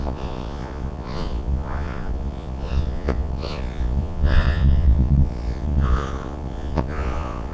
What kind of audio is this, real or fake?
fake